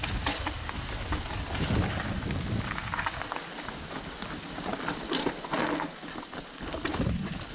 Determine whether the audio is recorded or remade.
recorded